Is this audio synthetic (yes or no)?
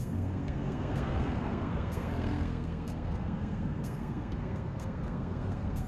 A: yes